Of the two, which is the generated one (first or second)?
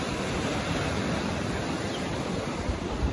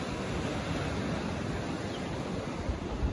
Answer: first